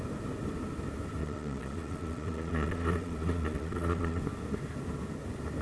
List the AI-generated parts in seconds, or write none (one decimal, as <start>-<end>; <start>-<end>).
1.2-4.2